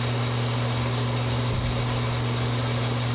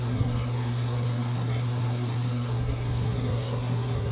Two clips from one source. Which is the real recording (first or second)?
first